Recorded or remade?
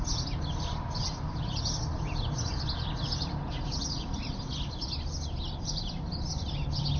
recorded